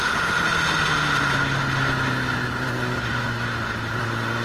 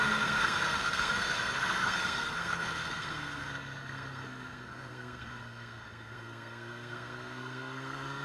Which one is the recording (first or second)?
first